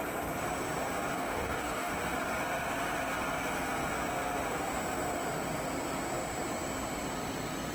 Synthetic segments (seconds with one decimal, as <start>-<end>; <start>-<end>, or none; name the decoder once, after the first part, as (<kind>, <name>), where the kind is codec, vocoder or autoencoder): 1.1-1.9 (codec, DAC)